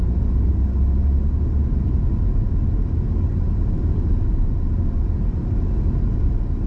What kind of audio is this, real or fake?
real